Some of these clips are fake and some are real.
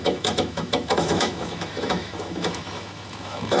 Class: fake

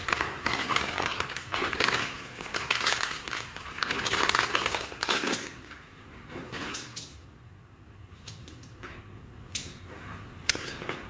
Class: fake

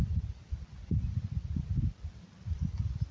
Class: real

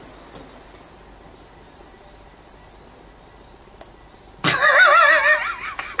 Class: real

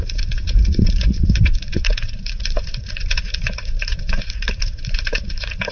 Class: fake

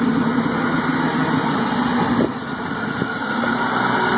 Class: real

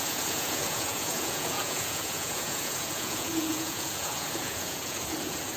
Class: fake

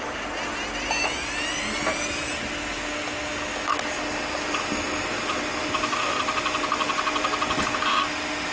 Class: real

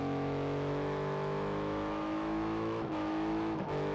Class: fake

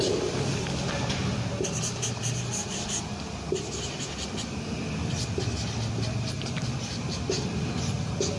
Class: real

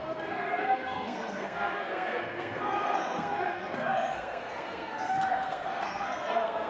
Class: fake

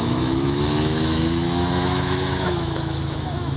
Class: fake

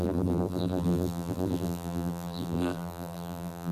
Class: fake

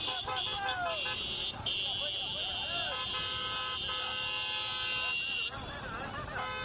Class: real